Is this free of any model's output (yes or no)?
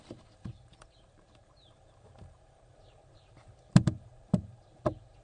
no